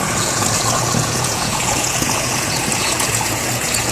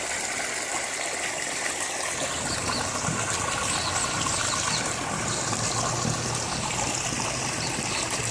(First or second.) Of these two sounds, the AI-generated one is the first